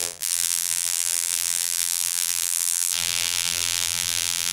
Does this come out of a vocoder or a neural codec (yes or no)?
yes